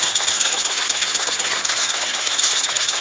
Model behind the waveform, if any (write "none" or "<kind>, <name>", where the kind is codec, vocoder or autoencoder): codec, SNAC